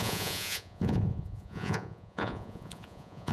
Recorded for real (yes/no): no